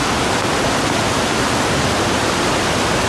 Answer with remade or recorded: recorded